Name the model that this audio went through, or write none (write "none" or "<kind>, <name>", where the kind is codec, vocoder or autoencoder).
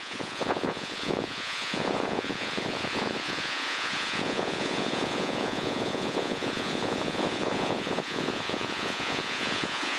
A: vocoder, Vocos